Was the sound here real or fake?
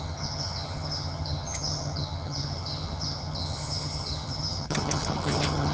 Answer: fake